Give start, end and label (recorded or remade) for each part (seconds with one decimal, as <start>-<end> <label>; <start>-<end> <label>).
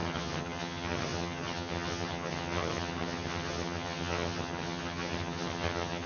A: 0.0-6.1 remade